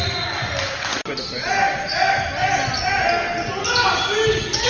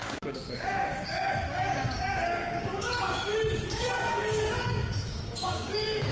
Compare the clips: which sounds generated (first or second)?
second